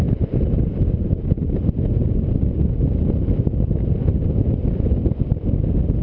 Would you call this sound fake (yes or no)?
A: no